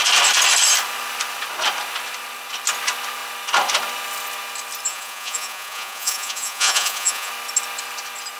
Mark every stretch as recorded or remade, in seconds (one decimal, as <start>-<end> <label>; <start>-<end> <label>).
0.0-4.9 recorded; 4.9-7.3 remade; 7.3-8.4 recorded